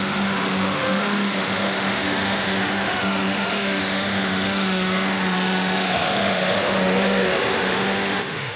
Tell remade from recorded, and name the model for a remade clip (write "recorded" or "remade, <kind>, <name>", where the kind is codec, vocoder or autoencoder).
remade, autoencoder, DAC-VAE